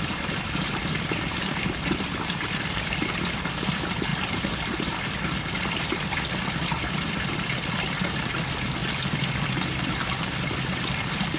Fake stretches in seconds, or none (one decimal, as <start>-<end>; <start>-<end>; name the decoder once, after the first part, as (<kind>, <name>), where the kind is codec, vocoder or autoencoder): 0.0-11.4 (vocoder, BigVGAN v2)